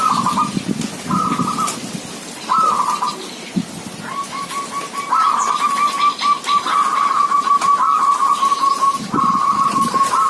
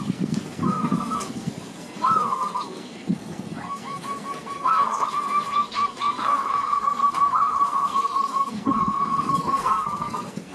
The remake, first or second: second